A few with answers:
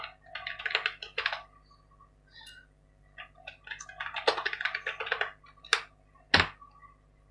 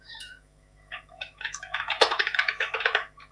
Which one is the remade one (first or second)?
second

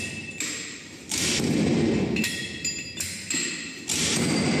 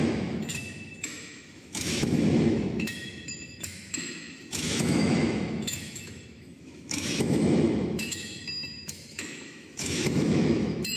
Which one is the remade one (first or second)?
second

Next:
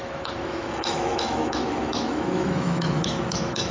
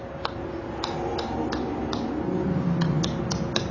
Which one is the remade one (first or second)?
first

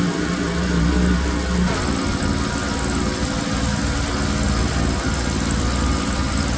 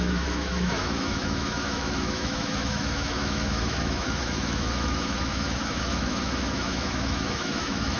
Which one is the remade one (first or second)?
second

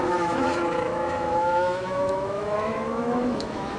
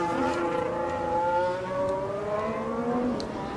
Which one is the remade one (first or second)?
first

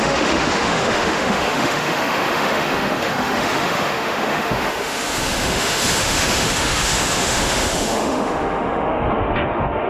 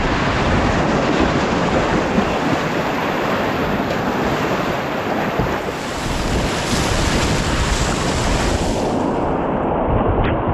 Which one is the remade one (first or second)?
first